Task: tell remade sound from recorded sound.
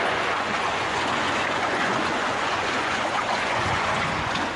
remade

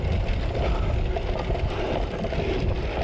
recorded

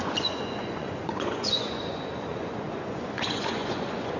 remade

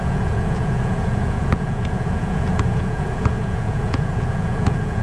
remade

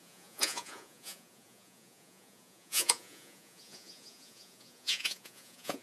remade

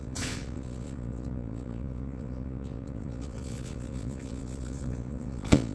remade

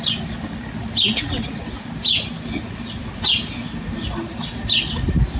recorded